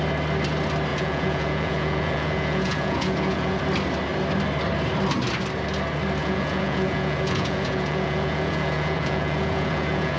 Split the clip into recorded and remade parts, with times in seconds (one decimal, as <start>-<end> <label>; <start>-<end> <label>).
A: 0.0-0.9 recorded; 0.9-3.6 remade; 3.6-6.2 recorded; 6.2-10.2 remade